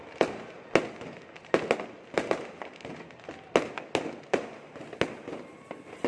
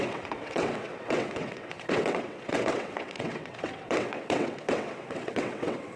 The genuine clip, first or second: first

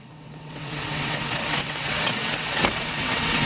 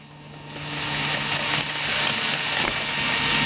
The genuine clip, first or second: second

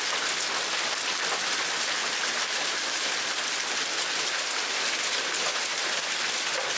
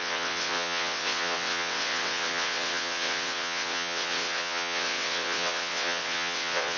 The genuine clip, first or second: first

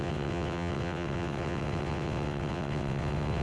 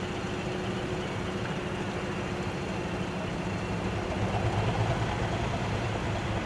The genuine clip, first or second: second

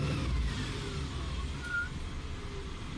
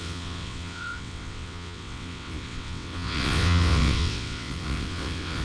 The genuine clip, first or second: first